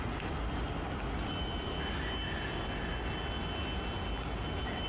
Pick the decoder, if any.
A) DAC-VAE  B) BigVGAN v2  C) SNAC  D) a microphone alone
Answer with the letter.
D